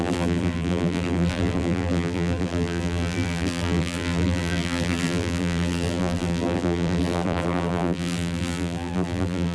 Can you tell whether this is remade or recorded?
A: remade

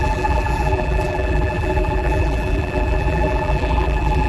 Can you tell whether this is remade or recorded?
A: remade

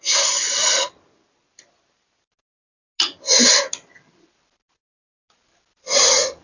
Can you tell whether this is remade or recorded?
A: recorded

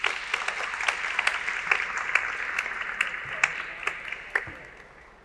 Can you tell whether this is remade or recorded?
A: recorded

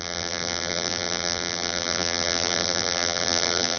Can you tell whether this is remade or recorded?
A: remade